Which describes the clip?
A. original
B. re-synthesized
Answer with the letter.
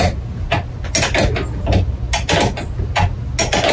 A